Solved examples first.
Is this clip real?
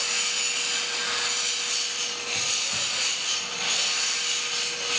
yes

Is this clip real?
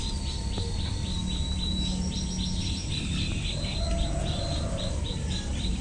yes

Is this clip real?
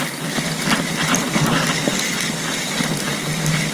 yes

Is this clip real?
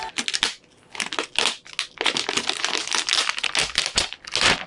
yes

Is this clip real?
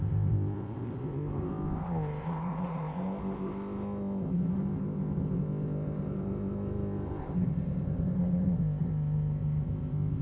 no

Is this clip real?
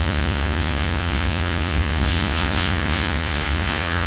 no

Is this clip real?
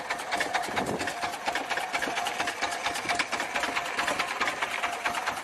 yes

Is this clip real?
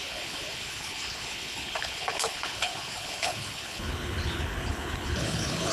no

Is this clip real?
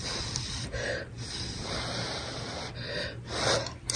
yes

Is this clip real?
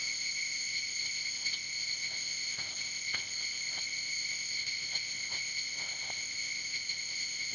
no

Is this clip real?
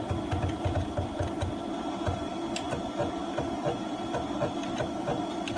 yes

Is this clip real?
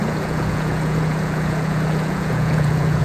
no